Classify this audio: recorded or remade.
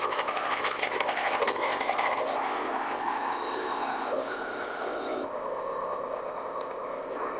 remade